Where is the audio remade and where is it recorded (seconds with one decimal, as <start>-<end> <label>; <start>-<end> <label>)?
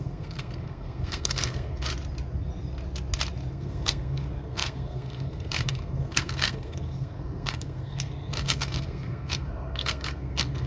0.0-1.9 remade; 1.9-3.5 recorded; 3.5-10.7 remade